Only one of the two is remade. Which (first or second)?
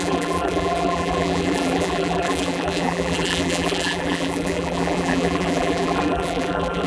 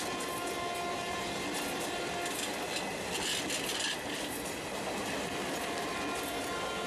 first